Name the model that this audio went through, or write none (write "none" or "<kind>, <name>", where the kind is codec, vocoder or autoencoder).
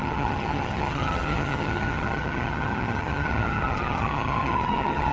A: vocoder, HiFi-GAN